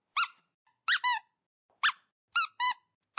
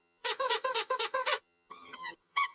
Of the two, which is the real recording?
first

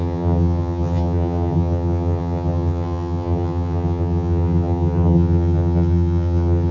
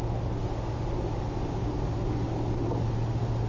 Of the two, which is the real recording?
second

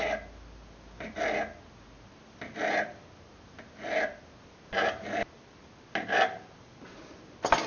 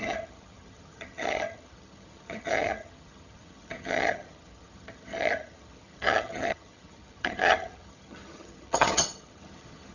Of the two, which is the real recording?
first